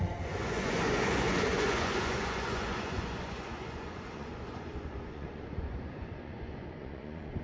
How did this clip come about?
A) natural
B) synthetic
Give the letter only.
B